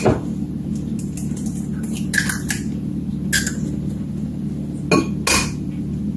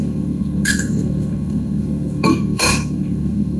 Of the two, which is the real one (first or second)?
first